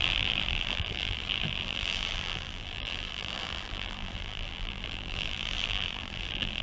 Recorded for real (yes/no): no